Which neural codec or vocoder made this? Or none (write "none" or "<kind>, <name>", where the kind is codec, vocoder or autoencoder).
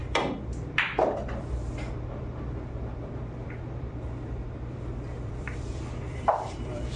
vocoder, BigVGAN v2